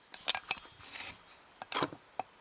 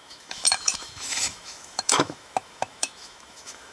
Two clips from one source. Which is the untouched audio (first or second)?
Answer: first